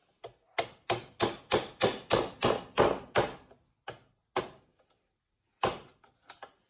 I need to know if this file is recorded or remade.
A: recorded